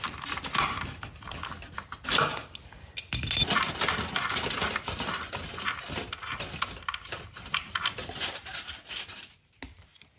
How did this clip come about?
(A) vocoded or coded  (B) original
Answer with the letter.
B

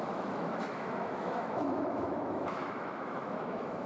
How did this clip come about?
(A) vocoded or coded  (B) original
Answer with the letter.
A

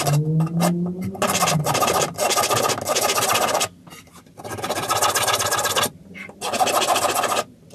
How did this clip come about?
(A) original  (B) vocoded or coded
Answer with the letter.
A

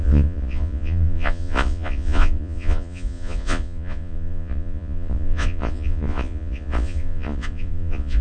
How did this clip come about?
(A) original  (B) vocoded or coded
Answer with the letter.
B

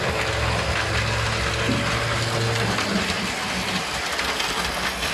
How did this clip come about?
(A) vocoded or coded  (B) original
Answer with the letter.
B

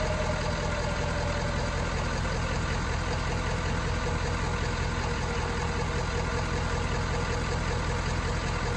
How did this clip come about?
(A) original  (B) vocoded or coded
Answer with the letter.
A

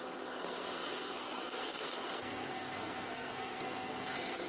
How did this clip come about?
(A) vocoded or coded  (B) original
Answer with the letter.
A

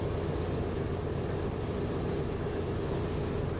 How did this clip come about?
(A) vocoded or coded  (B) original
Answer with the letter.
B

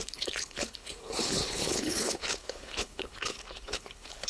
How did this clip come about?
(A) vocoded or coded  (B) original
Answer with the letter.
A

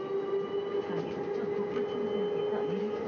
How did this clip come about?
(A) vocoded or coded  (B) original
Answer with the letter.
B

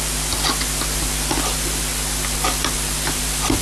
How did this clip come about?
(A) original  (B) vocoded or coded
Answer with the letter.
A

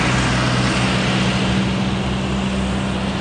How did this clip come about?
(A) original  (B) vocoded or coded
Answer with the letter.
A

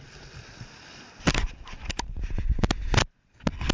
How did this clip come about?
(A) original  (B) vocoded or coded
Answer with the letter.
A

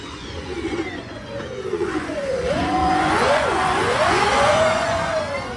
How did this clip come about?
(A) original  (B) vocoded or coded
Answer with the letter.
B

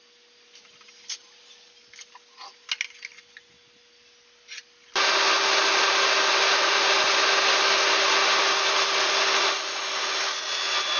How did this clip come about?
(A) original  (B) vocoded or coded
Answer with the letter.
A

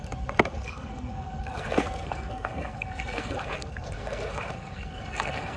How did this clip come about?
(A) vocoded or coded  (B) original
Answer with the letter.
A